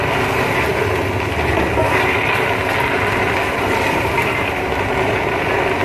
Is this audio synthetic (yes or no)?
no